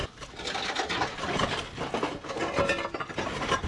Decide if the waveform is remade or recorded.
recorded